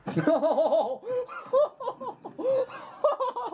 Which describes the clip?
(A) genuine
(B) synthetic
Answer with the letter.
A